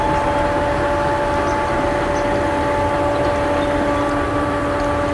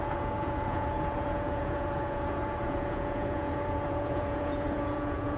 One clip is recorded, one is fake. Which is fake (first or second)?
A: second